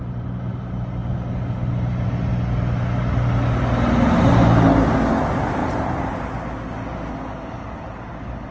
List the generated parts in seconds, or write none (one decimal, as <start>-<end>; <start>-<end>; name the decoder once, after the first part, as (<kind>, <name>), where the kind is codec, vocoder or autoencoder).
5.6-6.1 (vocoder, BigVGAN v2)